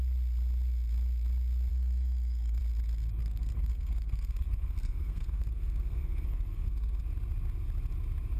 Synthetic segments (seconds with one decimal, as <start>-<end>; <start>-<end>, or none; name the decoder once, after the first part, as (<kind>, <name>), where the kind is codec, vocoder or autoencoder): 1.7-2.6 (codec, SNAC); 3.2-7.0